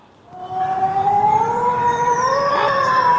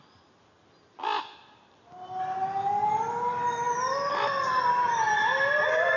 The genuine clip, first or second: second